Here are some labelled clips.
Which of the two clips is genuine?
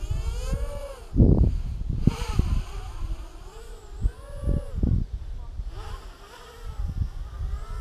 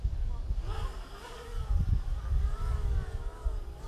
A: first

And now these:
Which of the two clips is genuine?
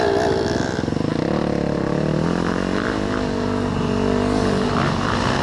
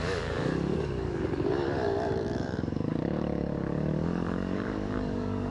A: first